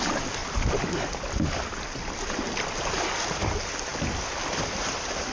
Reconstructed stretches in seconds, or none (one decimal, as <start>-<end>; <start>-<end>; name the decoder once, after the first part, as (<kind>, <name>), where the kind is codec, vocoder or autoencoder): 0.4-2.4 (vocoder, BigVGAN v2)